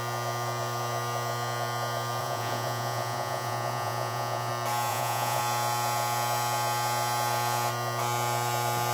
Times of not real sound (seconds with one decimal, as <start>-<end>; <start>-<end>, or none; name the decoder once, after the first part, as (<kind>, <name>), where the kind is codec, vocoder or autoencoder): 2.2-4.5 (vocoder, Vocos); 4.9-5.4